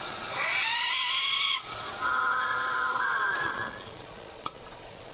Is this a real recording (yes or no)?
no